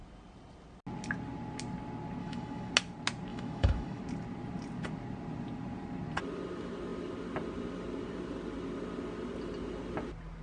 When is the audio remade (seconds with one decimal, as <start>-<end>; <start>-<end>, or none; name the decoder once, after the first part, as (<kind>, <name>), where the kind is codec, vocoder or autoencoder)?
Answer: 2.2-2.7 (autoencoder, DAC-VAE); 3.3-4.0